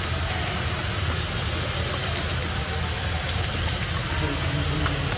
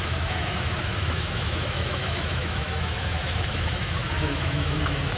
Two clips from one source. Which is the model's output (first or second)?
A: second